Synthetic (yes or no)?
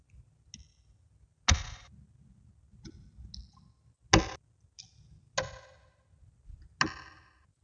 no